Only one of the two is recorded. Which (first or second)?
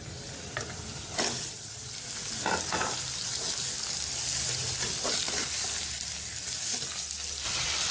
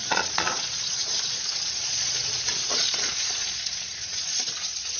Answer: first